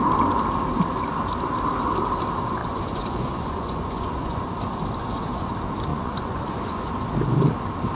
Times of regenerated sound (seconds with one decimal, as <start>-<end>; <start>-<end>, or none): 2.6-4.4; 5.0-5.5; 5.9-6.9